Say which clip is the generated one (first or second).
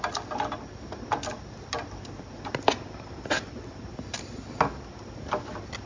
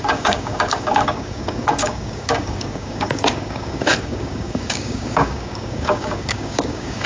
second